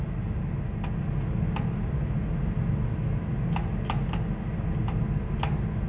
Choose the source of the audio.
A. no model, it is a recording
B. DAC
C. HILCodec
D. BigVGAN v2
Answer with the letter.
A